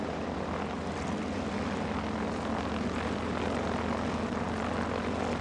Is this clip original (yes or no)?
yes